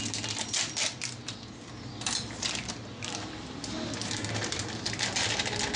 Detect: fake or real real